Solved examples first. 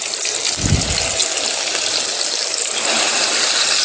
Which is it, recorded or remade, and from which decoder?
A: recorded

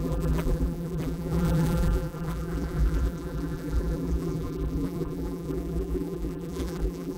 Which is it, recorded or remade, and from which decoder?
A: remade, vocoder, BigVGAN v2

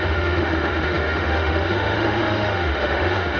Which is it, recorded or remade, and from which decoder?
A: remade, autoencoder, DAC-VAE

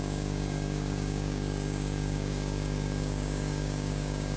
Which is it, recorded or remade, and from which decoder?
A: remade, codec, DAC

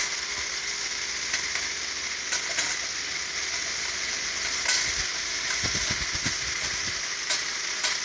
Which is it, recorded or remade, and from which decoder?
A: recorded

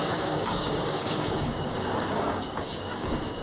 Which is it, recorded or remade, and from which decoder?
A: remade, codec, DAC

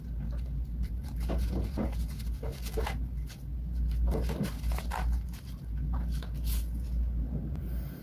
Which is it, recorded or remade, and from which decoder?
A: recorded